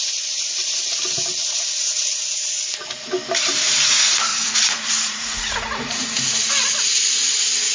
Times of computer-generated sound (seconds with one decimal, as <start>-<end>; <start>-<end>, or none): 4.3-6.2